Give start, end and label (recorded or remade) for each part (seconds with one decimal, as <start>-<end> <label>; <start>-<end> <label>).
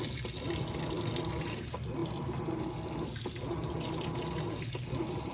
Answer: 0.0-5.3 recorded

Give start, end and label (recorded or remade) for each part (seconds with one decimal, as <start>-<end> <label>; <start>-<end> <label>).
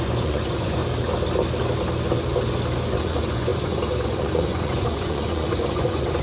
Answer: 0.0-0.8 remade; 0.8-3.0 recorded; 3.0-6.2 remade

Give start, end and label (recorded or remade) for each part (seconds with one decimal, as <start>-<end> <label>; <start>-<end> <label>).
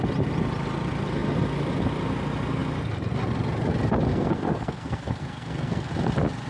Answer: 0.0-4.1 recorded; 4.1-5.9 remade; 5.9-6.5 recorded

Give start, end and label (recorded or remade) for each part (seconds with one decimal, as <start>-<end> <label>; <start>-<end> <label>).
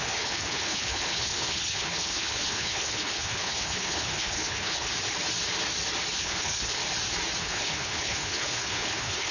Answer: 0.0-4.9 remade; 4.9-6.2 recorded; 6.2-6.8 remade; 6.8-7.4 recorded; 7.4-9.3 remade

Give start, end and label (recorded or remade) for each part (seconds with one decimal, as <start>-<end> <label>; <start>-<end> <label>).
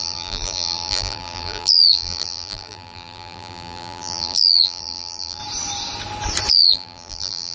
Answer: 0.0-5.4 remade; 5.4-6.5 recorded; 6.5-7.5 remade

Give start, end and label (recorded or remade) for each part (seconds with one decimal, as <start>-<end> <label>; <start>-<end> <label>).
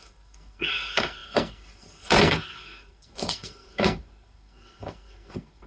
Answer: 0.0-5.7 remade